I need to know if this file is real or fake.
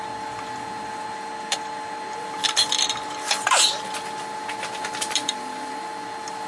real